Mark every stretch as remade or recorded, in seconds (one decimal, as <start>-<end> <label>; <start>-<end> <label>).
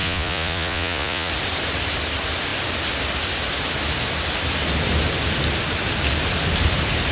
0.0-1.3 remade; 1.3-7.1 recorded